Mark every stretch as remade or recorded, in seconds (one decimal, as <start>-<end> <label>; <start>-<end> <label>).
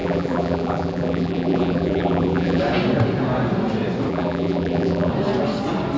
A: 0.0-2.6 remade; 2.6-4.1 recorded; 4.1-5.1 remade; 5.1-6.0 recorded